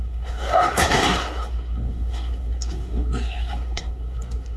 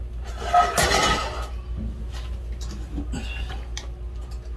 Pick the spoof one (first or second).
first